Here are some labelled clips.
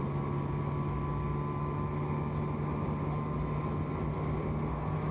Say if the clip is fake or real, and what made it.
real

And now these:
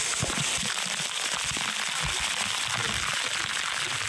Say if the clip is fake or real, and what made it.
real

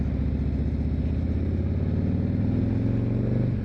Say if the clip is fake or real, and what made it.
real